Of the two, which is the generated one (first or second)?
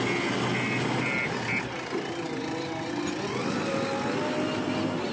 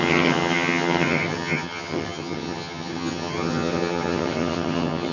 second